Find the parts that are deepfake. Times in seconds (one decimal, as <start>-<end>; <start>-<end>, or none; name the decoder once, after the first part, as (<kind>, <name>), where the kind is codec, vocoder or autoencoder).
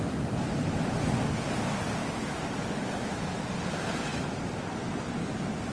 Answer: 2.0-3.5 (autoencoder, DAC-VAE)